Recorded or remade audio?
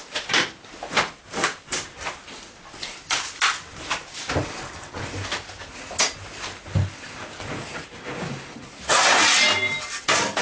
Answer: recorded